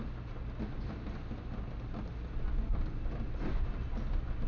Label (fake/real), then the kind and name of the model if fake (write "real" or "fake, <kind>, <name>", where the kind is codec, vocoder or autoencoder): real